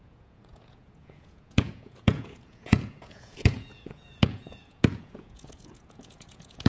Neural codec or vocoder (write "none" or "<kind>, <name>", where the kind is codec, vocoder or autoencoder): vocoder, Vocos